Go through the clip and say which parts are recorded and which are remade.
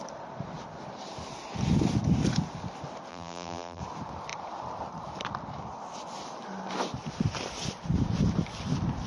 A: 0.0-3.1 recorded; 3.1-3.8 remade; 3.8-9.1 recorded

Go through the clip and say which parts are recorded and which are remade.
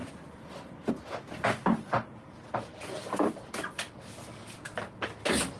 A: 0.0-0.9 remade; 0.9-5.6 recorded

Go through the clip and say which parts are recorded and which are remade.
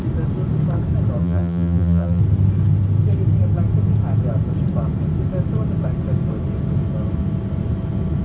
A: 0.0-1.2 recorded; 1.2-2.2 remade; 2.2-8.2 recorded